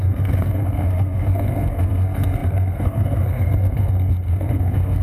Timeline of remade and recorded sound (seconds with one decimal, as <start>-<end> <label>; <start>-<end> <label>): 0.0-5.0 remade